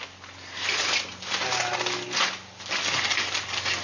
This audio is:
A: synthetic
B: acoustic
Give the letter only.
B